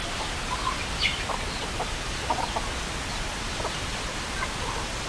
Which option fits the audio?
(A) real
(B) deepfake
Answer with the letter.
A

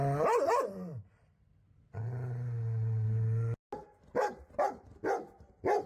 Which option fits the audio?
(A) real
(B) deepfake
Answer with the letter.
A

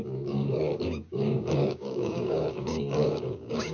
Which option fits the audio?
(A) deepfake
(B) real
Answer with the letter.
A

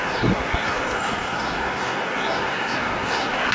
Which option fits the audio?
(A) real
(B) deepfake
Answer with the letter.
B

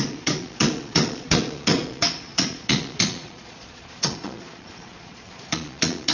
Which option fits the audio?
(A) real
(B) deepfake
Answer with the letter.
B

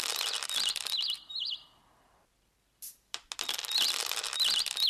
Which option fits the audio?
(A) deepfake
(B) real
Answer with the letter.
B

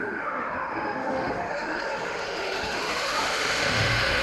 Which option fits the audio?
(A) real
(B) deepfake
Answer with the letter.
B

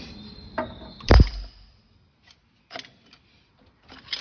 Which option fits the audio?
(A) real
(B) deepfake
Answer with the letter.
A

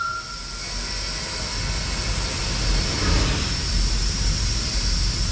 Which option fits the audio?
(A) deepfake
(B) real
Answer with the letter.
B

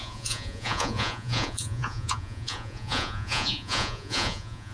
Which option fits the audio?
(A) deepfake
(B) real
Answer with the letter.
A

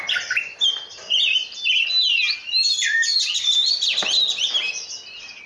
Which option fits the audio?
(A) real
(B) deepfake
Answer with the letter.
A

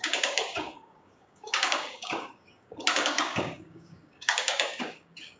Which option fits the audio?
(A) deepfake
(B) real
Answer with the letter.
A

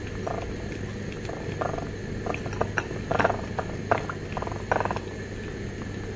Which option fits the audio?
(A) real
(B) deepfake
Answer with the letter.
A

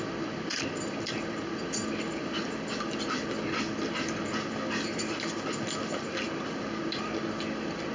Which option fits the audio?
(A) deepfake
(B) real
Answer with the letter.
B